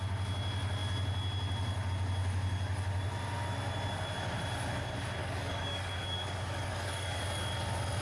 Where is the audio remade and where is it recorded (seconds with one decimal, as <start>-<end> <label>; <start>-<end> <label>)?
0.0-5.2 recorded; 5.2-7.2 remade; 7.2-8.0 recorded